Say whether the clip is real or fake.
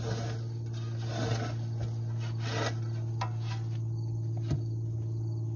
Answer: real